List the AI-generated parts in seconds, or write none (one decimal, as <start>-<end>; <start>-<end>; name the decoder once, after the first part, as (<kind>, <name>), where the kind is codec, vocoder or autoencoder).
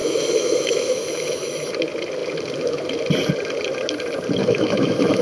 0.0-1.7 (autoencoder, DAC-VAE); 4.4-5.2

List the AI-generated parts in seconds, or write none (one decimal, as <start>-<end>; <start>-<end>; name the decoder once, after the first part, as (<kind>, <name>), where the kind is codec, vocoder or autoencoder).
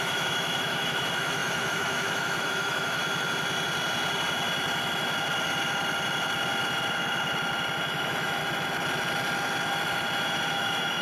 0.0-3.0 (autoencoder, DAC-VAE); 7.9-8.4; 10.5-11.0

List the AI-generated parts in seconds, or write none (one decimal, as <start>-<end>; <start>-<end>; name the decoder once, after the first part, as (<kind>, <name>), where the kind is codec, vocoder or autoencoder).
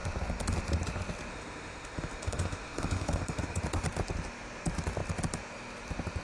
1.3-3.6 (autoencoder, DAC-VAE)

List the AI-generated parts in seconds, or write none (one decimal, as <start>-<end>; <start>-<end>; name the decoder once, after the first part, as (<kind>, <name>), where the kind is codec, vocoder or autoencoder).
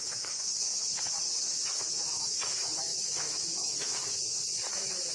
0.0-5.1 (autoencoder, DAC-VAE)